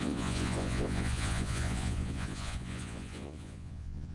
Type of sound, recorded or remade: remade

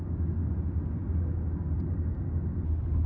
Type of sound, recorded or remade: recorded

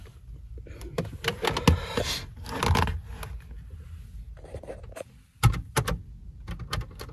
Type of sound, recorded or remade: recorded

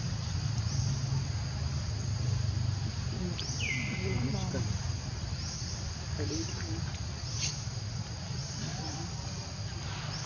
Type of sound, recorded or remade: recorded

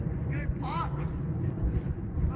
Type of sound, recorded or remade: remade